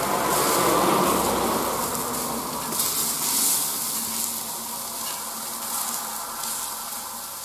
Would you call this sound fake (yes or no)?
no